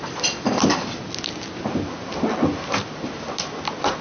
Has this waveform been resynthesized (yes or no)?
no